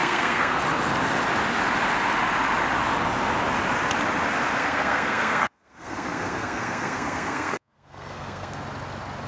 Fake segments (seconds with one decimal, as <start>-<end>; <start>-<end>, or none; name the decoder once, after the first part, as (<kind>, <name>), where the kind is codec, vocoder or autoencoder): 0.0-0.6 (codec, SNAC); 4.6-8.6